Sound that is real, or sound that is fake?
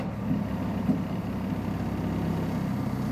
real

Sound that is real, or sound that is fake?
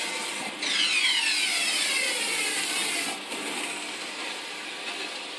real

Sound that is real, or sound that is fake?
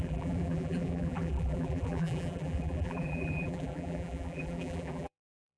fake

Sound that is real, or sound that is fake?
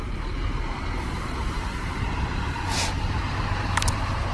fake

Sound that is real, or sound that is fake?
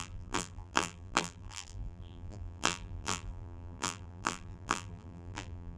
fake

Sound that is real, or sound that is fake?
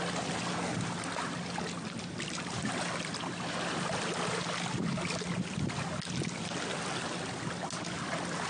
real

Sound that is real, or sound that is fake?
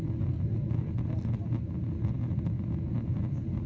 real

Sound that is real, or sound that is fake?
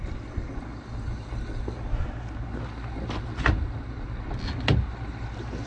real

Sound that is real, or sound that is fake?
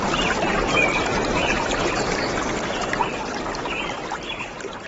real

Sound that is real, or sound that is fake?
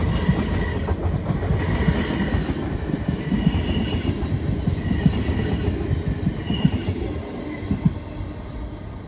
real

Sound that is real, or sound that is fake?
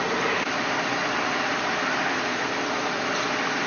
fake